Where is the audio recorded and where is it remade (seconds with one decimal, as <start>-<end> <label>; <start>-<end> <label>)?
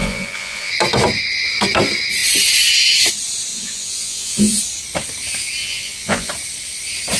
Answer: 0.0-0.7 remade; 0.7-3.5 recorded; 3.5-4.6 remade; 4.6-5.6 recorded; 5.6-6.3 remade; 6.3-7.2 recorded